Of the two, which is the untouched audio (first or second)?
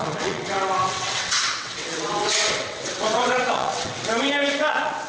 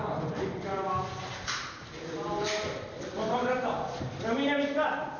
second